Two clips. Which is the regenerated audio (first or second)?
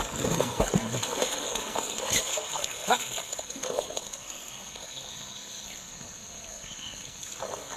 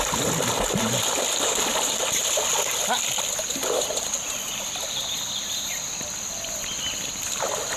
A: first